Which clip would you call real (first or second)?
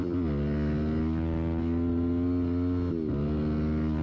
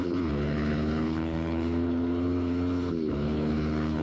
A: first